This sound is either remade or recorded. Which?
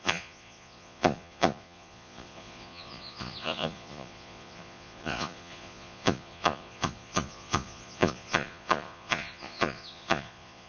remade